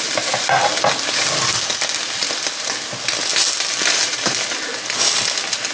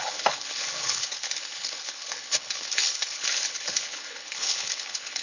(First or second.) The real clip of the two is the first